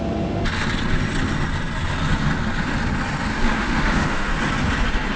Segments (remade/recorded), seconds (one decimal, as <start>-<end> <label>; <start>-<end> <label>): 0.0-3.3 recorded; 3.3-4.4 remade; 4.4-5.2 recorded